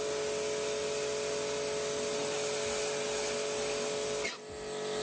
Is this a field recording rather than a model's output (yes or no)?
yes